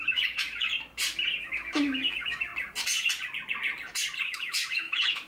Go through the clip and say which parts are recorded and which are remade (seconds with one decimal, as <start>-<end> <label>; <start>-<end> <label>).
0.0-0.7 remade; 0.7-1.4 recorded; 1.4-2.5 remade; 2.5-4.2 recorded; 4.2-5.3 remade